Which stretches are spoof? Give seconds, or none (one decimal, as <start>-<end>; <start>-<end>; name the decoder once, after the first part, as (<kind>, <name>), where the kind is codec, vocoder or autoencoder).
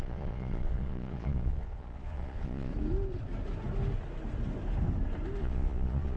0.0-2.7 (vocoder, Vocos); 5.4-6.2